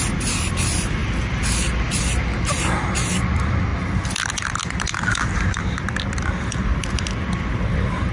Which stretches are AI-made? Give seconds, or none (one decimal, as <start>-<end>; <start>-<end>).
none

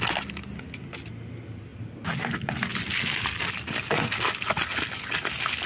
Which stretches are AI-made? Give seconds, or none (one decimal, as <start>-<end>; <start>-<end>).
none

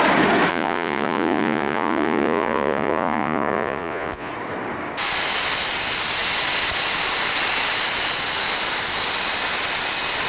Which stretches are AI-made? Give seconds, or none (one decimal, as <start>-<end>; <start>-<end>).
0.5-4.3

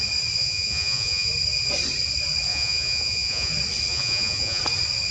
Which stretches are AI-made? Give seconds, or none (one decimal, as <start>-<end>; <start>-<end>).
0.4-1.3; 2.5-3.5; 3.9-4.6

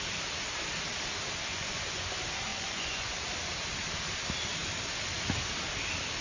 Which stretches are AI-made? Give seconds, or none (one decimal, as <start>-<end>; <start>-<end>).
1.5-2.1; 2.5-3.2

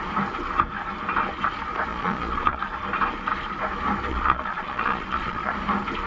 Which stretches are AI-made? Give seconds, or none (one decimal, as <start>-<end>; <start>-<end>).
1.9-2.6; 4.1-5.5